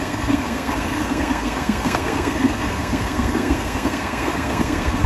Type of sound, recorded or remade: remade